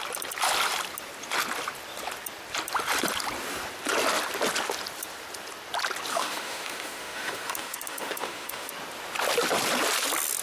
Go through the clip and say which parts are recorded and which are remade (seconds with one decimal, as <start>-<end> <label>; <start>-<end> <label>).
0.0-6.1 recorded; 6.1-8.7 remade; 8.7-10.4 recorded